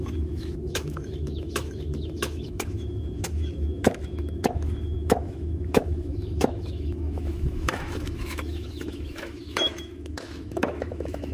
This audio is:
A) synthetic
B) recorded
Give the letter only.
A